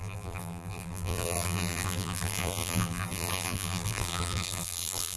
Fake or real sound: fake